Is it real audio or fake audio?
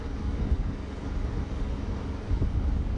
fake